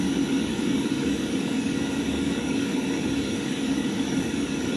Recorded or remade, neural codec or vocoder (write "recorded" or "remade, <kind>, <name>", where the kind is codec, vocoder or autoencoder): remade, codec, DAC